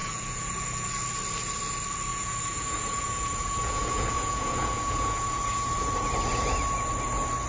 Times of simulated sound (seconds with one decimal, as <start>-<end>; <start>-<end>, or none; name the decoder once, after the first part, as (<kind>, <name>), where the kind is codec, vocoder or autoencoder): 0.0-0.9 (vocoder, Vocos); 2.1-5.9